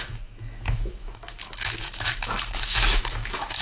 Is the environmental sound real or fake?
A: fake